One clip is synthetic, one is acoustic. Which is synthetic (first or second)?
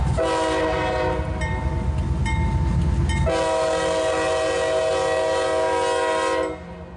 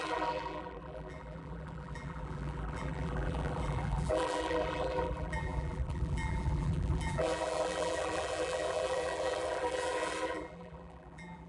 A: second